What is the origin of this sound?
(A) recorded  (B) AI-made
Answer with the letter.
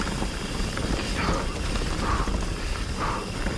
A